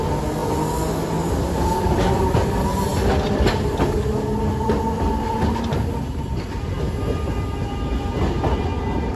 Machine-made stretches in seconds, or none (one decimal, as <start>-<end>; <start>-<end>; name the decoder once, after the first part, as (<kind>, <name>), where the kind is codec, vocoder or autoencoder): none